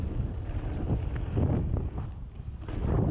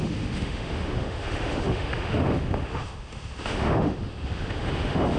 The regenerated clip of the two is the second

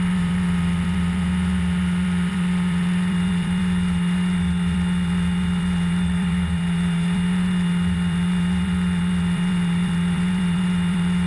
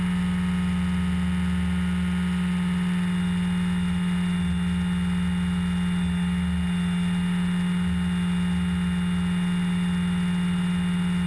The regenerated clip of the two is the first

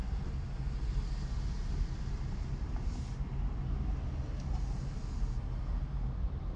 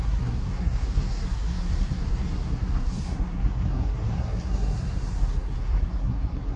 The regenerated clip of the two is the second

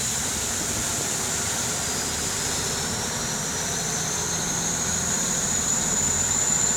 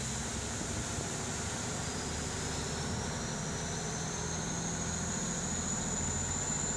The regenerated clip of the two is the first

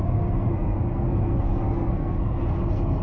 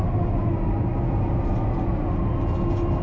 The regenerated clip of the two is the first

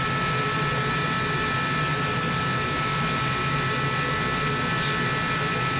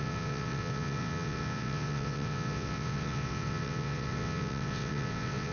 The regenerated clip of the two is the second